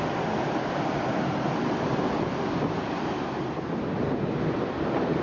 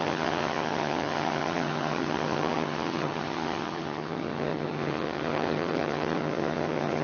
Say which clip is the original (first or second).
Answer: first